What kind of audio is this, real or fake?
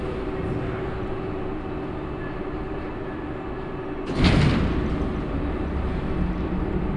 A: real